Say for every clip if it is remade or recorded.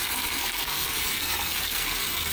remade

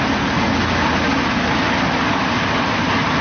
recorded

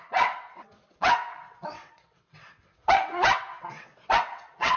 remade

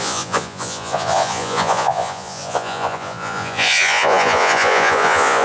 remade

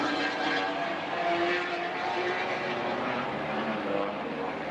remade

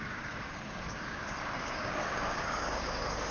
remade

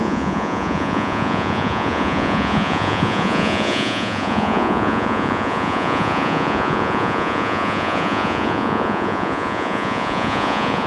remade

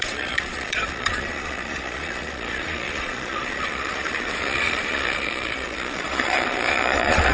remade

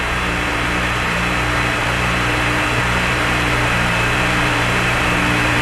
remade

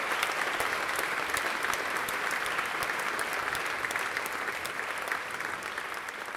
recorded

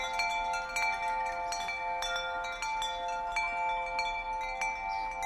recorded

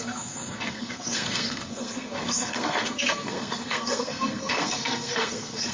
remade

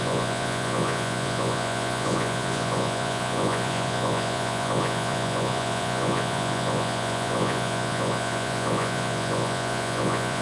remade